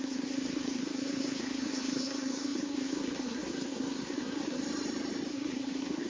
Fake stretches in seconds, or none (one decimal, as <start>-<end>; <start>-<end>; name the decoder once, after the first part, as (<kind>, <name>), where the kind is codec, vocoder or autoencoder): 0.0-4.6 (codec, SNAC); 5.3-6.1